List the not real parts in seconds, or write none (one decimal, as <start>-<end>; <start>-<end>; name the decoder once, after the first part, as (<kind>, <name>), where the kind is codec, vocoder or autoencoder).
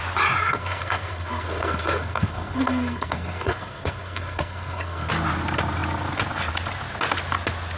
0.4-5.1 (codec, SNAC)